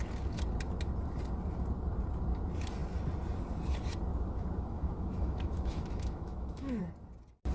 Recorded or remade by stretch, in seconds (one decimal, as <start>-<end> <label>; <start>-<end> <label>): 0.0-4.1 recorded; 4.1-6.8 remade; 6.8-7.5 recorded